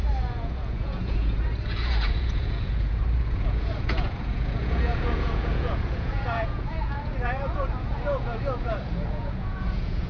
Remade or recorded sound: remade